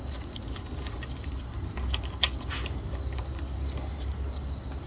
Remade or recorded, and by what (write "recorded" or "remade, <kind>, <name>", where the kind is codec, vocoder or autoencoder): recorded